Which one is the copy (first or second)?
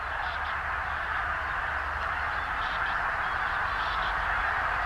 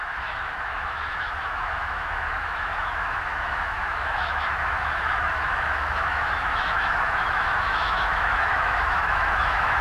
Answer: second